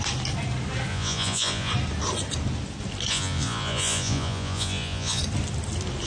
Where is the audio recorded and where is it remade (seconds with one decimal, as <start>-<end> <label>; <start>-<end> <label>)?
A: 0.0-0.9 recorded; 0.9-1.7 remade; 1.7-3.1 recorded; 3.1-5.2 remade; 5.2-6.1 recorded